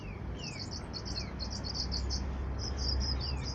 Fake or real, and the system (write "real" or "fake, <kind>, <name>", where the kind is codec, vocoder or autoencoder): real